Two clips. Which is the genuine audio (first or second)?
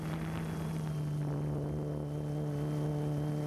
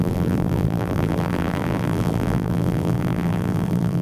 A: first